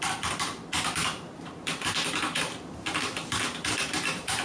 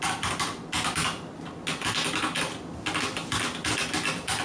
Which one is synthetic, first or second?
first